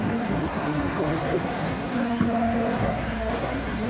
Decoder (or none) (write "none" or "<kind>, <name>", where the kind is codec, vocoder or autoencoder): codec, SNAC